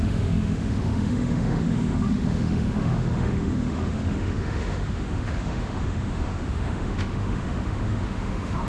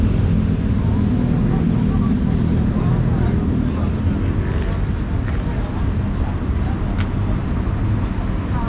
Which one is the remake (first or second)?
first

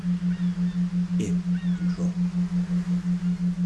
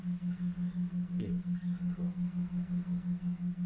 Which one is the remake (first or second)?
second